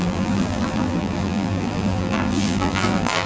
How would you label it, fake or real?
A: fake